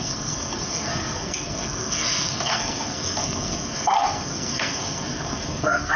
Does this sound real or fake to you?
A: fake